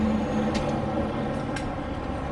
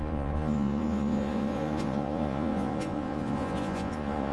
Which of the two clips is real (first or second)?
first